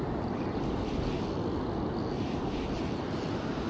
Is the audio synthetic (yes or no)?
no